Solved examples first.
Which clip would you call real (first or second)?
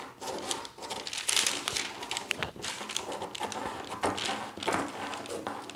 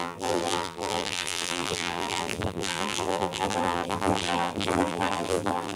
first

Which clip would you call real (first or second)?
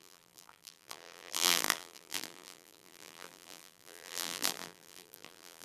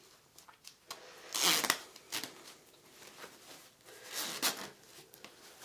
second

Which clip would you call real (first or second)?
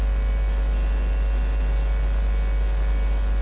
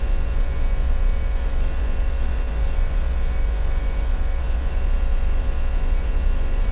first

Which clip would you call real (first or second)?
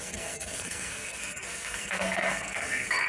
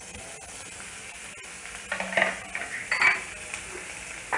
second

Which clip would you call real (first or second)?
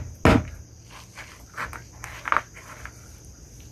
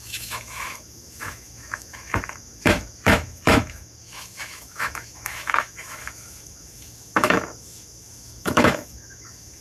first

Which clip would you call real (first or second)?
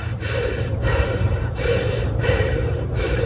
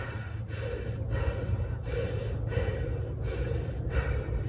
second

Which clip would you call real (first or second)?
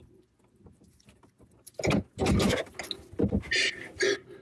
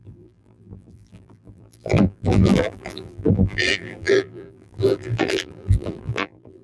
first